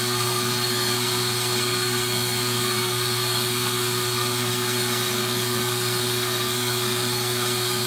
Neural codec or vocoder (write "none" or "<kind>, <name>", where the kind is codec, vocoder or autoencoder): codec, SNAC